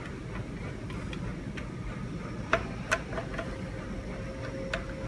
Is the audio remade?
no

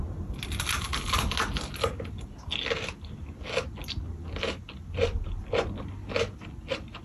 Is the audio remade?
no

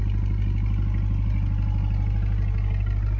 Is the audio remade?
no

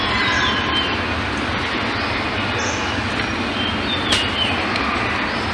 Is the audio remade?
no